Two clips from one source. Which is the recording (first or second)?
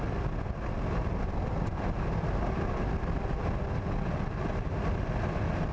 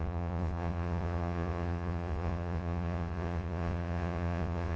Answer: first